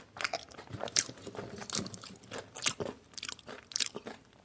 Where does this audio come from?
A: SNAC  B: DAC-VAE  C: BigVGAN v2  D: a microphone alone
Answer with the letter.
D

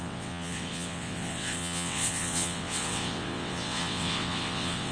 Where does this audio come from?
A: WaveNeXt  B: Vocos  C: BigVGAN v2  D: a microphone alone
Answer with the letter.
A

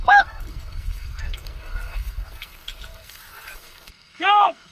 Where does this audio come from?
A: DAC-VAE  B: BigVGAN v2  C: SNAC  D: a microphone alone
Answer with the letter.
C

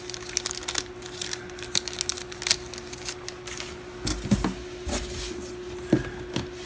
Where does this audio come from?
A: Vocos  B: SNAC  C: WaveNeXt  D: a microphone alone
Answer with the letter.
D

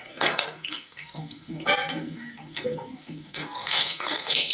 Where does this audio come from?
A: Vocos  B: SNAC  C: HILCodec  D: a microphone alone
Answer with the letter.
B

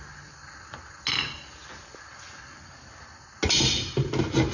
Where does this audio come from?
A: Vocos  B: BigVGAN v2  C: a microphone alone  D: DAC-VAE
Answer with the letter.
C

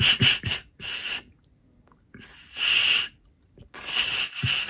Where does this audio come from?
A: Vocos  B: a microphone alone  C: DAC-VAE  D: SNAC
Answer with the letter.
B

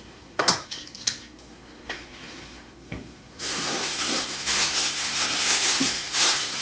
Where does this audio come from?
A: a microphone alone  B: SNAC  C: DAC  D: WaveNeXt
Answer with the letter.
B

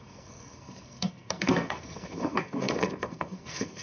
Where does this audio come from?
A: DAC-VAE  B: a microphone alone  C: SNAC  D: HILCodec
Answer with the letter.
C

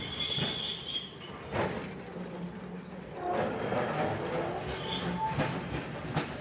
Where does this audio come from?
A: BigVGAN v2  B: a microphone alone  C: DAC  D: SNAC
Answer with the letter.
B